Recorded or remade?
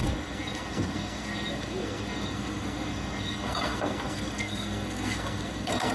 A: remade